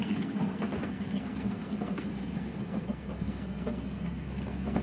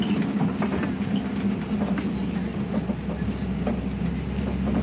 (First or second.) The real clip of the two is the second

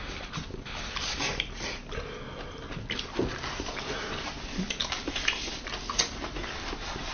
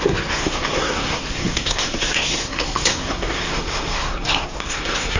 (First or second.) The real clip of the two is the first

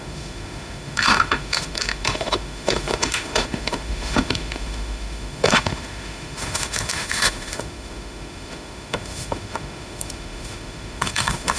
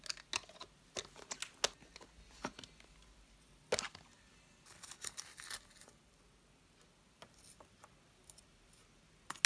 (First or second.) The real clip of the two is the second